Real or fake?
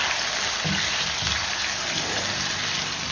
real